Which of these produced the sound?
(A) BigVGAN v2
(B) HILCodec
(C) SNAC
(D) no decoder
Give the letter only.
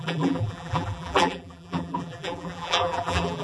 A